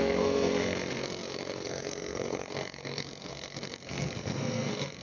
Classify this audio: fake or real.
fake